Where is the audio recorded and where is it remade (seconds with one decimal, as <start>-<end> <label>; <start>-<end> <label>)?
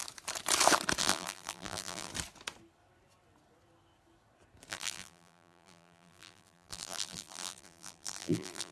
0.0-1.0 recorded; 1.0-2.1 remade; 2.1-4.7 recorded; 4.7-8.7 remade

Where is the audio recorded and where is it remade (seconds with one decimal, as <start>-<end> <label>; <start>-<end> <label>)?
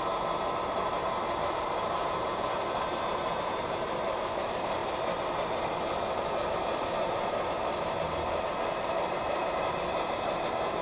0.0-4.8 remade; 4.8-6.5 recorded; 6.5-10.8 remade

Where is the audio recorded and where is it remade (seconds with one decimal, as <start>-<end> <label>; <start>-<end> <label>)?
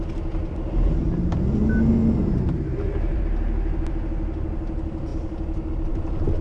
0.0-2.0 recorded; 2.0-3.2 remade; 3.2-6.4 recorded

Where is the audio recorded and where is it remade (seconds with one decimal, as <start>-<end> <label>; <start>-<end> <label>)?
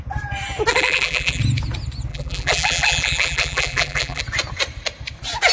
0.0-0.7 recorded; 0.7-1.4 remade; 1.4-2.1 recorded; 2.1-4.2 remade; 4.2-5.5 recorded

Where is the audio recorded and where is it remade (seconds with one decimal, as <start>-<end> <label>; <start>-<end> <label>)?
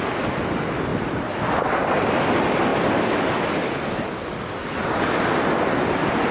0.0-0.9 recorded; 0.9-1.8 remade; 1.8-6.3 recorded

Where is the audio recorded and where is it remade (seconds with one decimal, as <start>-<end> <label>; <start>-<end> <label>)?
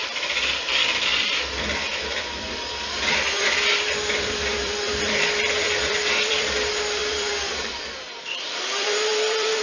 0.0-9.6 remade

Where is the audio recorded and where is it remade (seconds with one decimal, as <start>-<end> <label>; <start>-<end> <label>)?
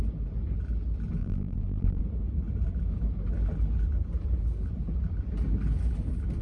0.0-1.2 recorded; 1.2-2.0 remade; 2.0-6.4 recorded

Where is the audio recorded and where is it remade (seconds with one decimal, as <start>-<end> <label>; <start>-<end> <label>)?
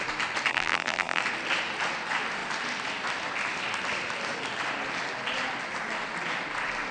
0.0-0.5 recorded; 0.5-1.2 remade; 1.2-6.9 recorded